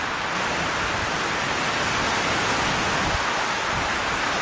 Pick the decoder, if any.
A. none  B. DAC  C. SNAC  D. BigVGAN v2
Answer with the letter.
A